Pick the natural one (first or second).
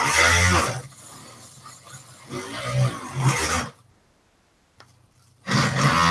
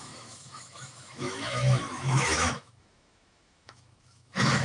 first